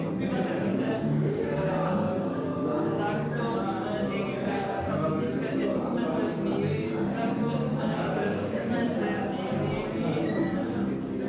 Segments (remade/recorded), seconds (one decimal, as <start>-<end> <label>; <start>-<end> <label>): 0.0-0.7 recorded; 0.7-2.6 remade; 2.6-4.5 recorded; 4.5-5.1 remade; 5.1-7.7 recorded; 7.7-8.7 remade; 8.7-11.3 recorded